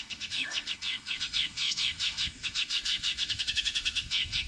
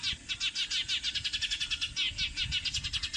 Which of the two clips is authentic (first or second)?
second